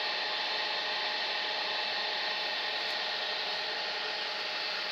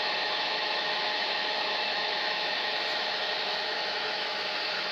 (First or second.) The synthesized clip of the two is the second